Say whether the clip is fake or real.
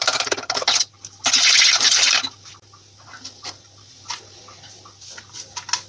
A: real